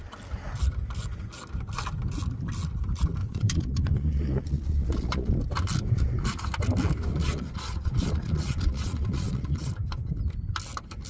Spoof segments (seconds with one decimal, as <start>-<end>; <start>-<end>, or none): 3.2-5.3; 7.1-9.7